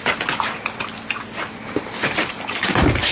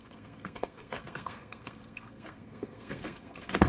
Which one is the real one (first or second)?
first